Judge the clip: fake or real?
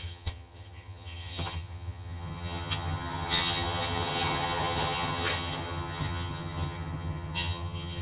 fake